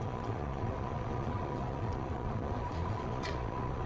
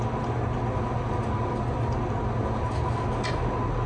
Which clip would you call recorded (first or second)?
second